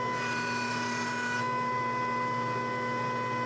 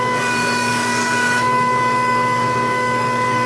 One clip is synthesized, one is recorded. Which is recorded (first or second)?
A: first